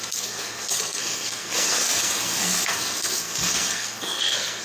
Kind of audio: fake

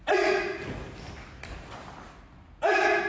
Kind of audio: real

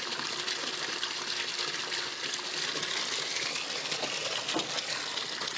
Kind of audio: real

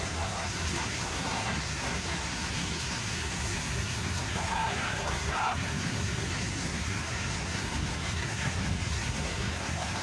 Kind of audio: fake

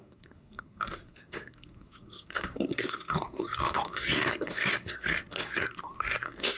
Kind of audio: fake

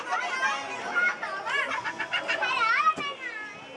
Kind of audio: real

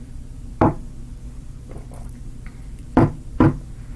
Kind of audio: fake